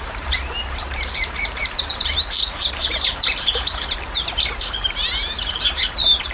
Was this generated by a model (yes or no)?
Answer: yes